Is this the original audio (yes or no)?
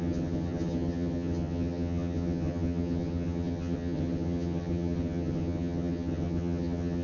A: no